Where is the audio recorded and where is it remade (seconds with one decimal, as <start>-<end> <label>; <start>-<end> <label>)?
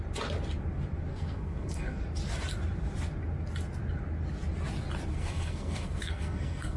0.0-1.1 recorded; 1.1-2.0 remade; 2.0-5.1 recorded; 5.1-6.8 remade